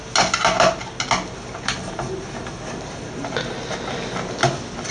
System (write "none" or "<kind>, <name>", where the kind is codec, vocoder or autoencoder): none